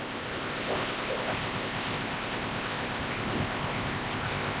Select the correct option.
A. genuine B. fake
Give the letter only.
B